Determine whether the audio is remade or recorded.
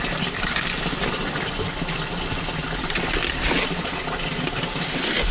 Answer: recorded